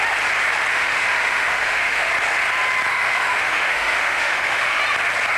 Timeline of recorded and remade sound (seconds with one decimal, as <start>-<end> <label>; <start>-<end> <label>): 0.0-0.7 recorded; 0.7-2.1 remade; 2.1-2.9 recorded; 2.9-4.8 remade; 4.8-5.4 recorded